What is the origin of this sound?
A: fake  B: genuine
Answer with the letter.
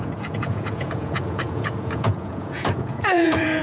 A